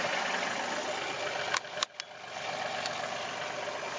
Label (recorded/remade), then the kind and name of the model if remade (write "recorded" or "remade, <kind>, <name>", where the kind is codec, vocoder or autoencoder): recorded